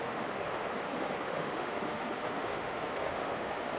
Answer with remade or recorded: remade